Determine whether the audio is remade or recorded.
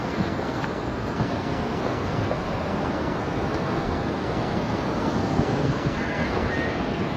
remade